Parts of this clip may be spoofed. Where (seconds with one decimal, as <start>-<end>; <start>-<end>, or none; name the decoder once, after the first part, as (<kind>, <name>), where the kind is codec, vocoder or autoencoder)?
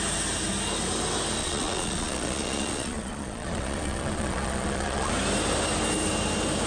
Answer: 1.4-5.1 (vocoder, Vocos)